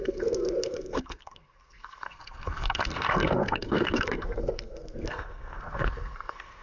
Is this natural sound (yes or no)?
no